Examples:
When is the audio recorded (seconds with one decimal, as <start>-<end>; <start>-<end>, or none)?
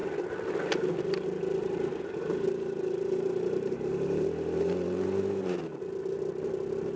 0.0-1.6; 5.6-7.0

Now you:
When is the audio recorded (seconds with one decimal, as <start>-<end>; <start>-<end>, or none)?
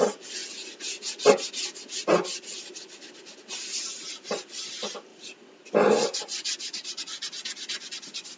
0.0-5.1; 6.2-8.4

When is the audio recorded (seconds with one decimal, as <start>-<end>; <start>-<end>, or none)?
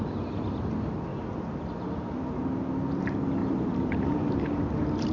0.0-3.4; 4.6-5.1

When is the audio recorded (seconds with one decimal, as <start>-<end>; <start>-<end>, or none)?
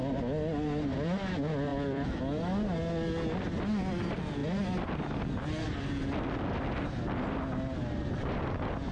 0.0-1.7; 2.2-8.9